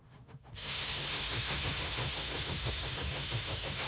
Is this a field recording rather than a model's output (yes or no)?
no